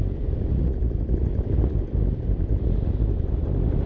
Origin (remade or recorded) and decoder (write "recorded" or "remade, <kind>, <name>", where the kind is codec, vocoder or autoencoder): recorded